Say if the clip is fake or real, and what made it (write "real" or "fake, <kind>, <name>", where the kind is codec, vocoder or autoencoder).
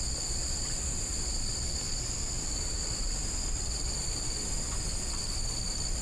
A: real